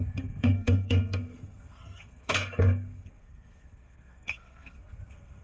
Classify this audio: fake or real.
fake